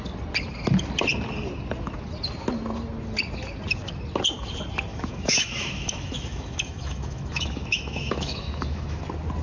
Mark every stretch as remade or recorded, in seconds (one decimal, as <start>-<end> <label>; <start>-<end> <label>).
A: 0.0-4.9 recorded; 4.9-9.0 remade; 9.0-9.4 recorded